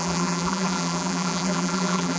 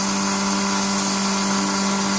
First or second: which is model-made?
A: first